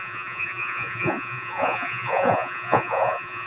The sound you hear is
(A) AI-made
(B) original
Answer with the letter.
A